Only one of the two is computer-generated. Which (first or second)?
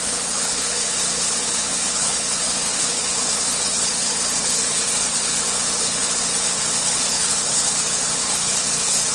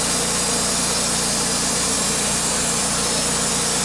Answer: first